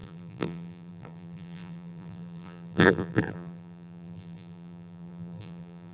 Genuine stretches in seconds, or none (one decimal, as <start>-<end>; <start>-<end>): none

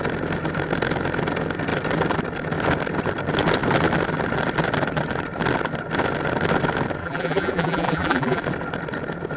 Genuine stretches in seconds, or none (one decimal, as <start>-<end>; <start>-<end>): 0.0-7.0; 8.4-9.4

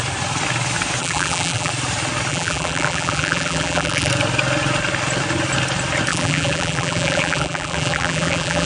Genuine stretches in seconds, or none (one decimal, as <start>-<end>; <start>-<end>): 0.0-1.0; 1.7-2.3; 4.1-6.1